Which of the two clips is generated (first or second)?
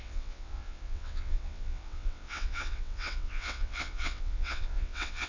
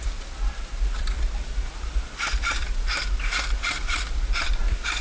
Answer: first